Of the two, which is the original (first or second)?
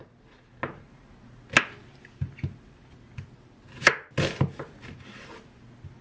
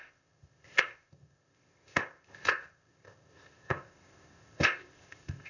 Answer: first